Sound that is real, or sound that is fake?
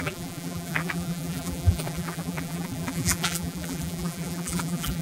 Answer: fake